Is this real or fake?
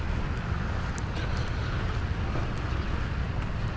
real